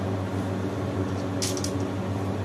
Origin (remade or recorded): recorded